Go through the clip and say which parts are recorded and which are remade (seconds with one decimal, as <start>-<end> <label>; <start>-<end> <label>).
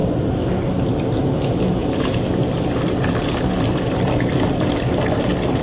0.0-1.0 remade; 1.0-1.8 recorded; 1.8-5.6 remade